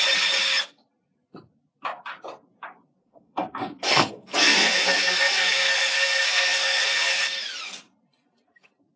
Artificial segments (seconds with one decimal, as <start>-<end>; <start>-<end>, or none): 3.0-7.2